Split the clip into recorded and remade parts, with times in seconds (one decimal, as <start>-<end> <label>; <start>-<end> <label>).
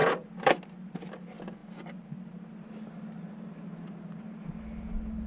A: 0.0-5.3 recorded